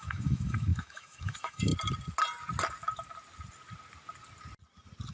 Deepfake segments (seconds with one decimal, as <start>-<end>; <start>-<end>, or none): 0.0-1.7